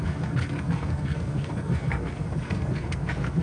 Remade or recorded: remade